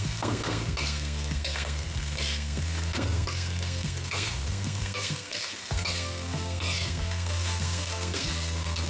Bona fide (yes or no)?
no